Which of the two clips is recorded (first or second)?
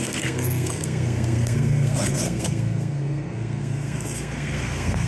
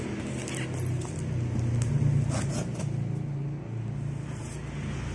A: second